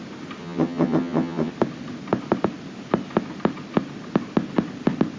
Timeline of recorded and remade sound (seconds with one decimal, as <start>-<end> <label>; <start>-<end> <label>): 0.0-0.4 recorded; 0.4-1.5 remade; 1.5-5.2 recorded